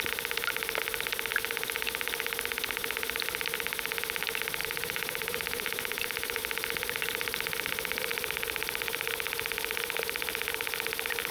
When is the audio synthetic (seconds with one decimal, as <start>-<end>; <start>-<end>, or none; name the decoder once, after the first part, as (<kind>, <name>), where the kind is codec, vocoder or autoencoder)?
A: 4.6-6.4 (vocoder, BigVGAN v2)